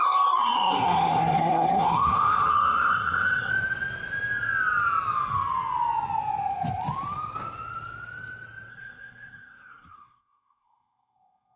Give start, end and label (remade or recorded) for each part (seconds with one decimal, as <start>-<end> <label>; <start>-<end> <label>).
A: 0.0-3.5 remade; 3.5-8.7 recorded; 8.7-11.6 remade